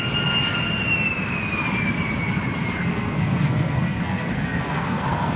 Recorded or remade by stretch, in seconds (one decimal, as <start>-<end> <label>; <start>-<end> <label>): 0.0-2.9 recorded; 2.9-5.4 remade